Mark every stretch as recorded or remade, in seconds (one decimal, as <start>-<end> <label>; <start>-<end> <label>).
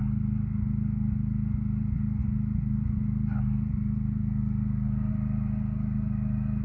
0.0-6.6 recorded